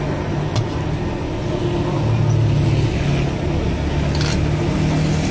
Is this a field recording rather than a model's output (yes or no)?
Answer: yes